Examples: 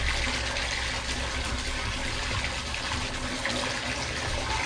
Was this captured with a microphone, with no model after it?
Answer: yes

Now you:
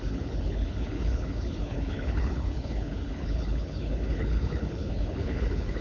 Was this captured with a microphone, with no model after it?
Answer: no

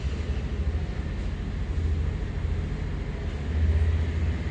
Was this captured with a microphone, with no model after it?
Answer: yes